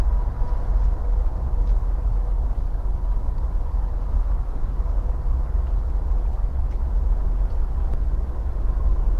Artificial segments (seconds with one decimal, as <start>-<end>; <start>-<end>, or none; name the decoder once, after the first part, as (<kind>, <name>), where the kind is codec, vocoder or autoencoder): 1.0-5.2 (codec, DAC); 6.3-6.8; 7.8-8.6